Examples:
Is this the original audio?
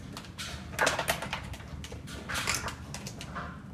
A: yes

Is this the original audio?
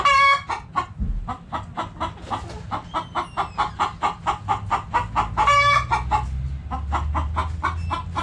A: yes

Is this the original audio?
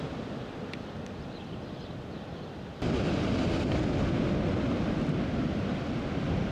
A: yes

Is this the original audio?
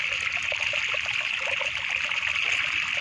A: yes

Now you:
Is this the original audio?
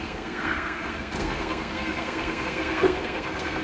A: no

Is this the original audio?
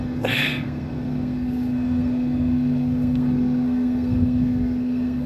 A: no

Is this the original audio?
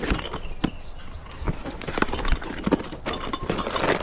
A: yes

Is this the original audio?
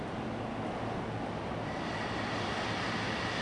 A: yes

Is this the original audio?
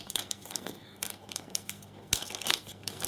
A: no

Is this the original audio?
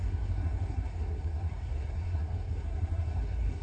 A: no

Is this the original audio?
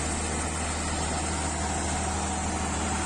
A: yes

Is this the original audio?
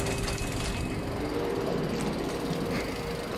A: yes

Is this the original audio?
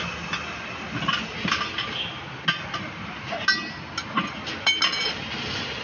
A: yes